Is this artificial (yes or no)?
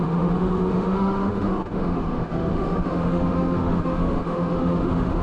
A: yes